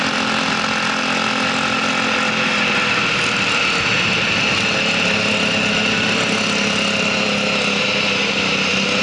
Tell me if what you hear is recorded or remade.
recorded